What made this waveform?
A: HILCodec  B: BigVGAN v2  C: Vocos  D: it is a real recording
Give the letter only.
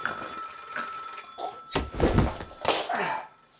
D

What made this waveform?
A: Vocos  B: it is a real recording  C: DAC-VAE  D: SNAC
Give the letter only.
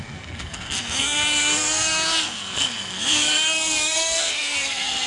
D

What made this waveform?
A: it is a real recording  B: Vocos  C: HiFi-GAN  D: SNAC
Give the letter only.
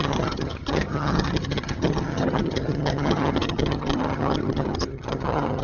C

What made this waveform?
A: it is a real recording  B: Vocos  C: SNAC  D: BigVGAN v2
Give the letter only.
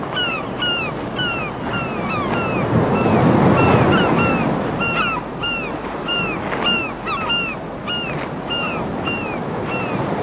A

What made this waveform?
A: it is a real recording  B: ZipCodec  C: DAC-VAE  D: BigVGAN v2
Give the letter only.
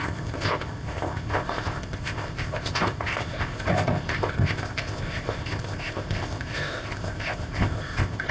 B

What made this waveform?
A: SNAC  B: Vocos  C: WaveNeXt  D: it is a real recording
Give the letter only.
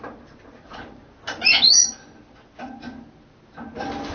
D